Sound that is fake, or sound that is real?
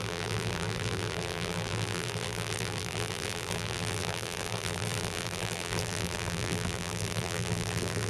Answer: fake